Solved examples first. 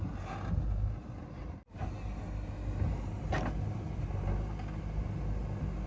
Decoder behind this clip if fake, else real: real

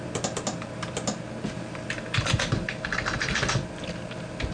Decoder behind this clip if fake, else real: real